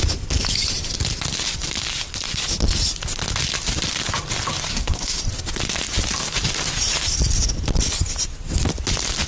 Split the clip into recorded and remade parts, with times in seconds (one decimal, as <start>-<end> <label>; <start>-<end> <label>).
0.0-4.7 recorded; 4.7-5.2 remade; 5.2-9.3 recorded